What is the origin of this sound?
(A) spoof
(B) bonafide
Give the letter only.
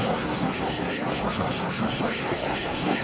A